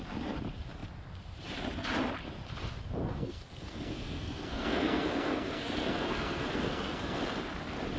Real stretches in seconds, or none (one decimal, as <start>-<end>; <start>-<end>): 0.0-3.0; 7.2-8.0